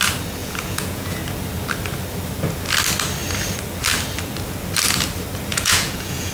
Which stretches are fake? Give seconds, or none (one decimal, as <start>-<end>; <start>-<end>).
0.4-1.2; 5.5-6.3